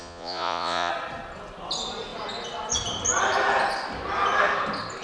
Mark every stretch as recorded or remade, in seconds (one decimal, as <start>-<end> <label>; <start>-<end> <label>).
0.0-0.9 remade; 0.9-5.0 recorded